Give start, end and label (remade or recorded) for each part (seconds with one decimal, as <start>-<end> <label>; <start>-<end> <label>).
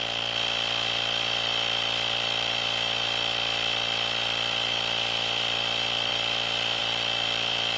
0.0-7.8 recorded